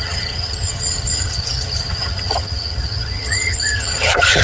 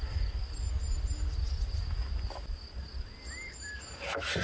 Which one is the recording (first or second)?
second